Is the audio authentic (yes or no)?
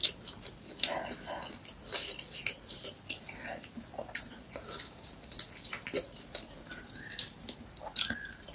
yes